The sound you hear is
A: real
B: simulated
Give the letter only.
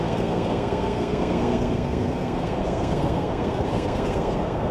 B